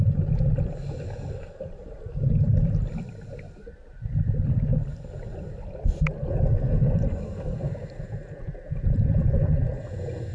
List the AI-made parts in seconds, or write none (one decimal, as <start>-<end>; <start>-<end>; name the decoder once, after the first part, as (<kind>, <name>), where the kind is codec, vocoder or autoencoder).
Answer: none